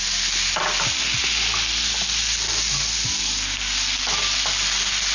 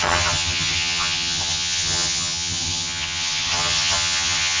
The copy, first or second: second